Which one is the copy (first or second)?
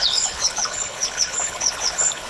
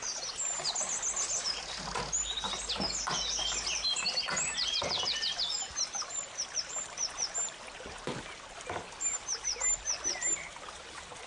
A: first